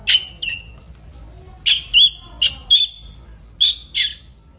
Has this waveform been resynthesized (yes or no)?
no